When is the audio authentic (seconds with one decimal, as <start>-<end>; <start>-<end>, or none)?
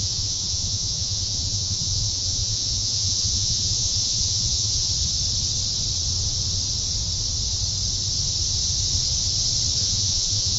4.9-9.8